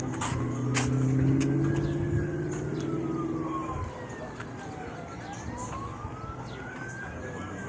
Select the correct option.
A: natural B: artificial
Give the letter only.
A